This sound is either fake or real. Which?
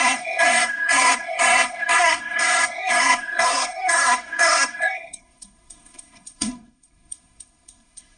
fake